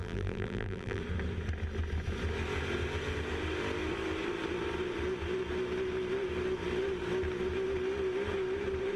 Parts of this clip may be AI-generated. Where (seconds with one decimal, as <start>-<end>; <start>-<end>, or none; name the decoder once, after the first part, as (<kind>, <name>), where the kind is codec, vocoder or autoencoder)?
0.0-1.0 (vocoder, BigVGAN v2)